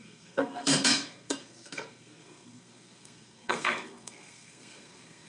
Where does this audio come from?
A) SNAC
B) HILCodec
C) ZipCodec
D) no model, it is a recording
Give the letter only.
A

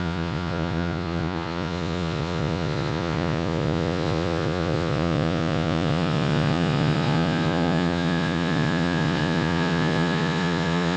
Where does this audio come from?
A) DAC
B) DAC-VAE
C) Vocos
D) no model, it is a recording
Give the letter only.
C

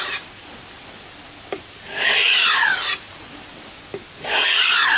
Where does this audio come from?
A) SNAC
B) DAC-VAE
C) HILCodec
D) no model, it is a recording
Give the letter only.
D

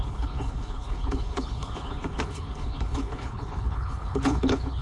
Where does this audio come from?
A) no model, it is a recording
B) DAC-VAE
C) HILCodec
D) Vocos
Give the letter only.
C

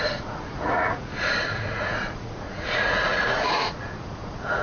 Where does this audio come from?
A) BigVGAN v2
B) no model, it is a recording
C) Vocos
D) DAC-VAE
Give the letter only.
C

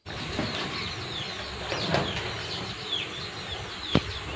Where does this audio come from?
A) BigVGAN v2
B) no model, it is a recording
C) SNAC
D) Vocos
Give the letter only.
B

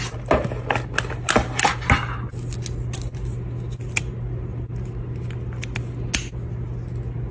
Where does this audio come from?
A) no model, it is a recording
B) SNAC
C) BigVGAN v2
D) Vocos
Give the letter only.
A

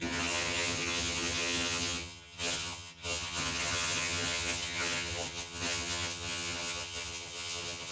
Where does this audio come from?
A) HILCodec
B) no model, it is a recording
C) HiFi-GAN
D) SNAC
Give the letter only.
C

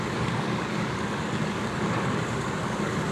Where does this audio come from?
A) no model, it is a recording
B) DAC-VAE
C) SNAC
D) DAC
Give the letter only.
D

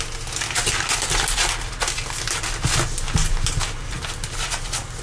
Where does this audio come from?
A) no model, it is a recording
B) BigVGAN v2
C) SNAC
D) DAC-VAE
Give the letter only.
A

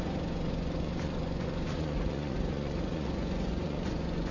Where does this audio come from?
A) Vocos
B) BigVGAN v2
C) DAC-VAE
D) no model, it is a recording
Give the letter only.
A